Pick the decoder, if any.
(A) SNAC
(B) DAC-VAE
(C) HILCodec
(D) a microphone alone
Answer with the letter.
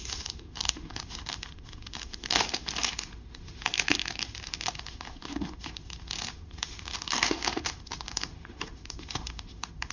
B